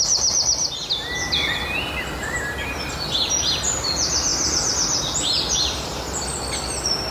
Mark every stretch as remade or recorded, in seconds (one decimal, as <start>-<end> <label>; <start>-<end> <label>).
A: 0.0-7.1 recorded